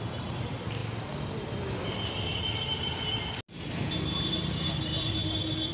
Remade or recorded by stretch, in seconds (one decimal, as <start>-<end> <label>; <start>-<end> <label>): 0.0-5.7 recorded